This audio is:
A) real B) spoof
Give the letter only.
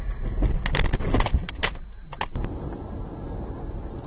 A